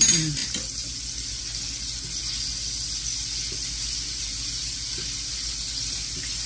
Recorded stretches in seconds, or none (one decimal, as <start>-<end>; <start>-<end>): 0.0-6.5